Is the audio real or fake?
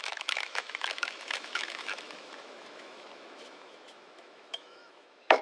fake